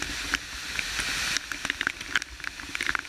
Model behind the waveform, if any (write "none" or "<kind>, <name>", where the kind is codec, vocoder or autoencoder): none